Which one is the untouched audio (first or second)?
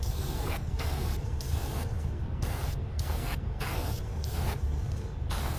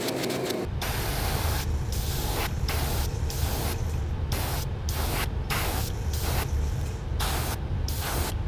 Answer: second